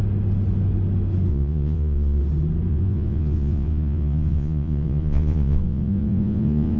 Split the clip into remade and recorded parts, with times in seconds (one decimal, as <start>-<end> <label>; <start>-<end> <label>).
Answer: 0.0-1.3 recorded; 1.3-2.2 remade; 2.2-2.7 recorded; 2.7-6.8 remade